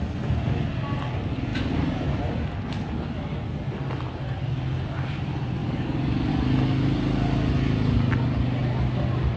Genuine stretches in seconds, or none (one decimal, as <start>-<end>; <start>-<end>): 0.0-5.6; 6.3-9.4